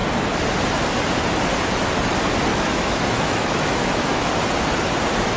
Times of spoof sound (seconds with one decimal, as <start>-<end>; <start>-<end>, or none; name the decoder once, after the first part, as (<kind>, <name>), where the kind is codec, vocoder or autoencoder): 2.5-4.3 (autoencoder, DAC-VAE)